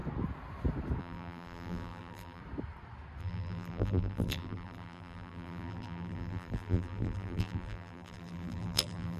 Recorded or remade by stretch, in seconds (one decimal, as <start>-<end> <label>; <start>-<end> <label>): 0.0-1.0 recorded; 1.0-2.4 remade; 2.4-3.2 recorded; 3.2-9.2 remade